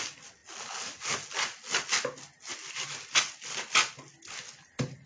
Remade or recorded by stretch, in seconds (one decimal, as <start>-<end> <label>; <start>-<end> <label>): 0.0-5.1 recorded